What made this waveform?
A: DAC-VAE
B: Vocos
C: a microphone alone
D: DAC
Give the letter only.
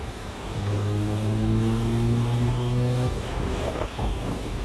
D